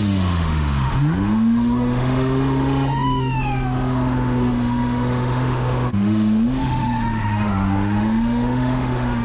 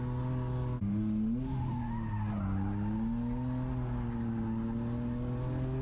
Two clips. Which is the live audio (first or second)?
second